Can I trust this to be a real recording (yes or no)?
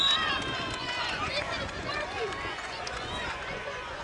no